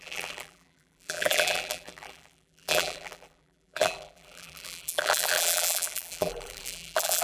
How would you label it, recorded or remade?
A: remade